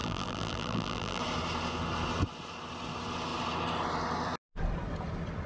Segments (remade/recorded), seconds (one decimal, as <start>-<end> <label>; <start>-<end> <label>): 0.0-1.2 remade; 1.2-5.5 recorded